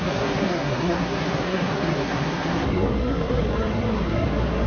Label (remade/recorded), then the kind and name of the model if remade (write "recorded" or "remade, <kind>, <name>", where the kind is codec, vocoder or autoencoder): remade, codec, SNAC